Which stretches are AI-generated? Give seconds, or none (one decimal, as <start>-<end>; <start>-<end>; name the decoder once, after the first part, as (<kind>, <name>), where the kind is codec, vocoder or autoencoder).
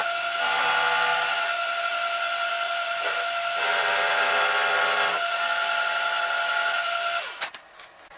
1.1-1.8 (vocoder, BigVGAN v2)